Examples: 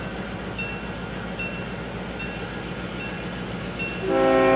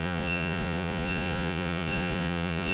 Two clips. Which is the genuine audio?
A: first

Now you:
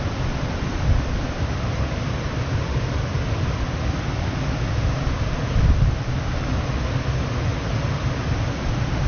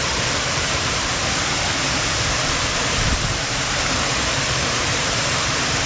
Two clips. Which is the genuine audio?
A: first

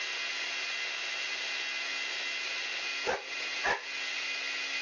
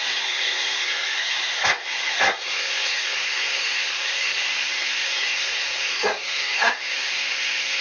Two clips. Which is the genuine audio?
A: first